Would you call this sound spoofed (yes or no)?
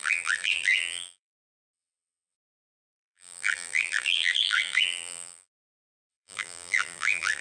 yes